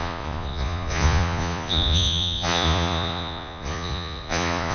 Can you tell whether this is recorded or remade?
remade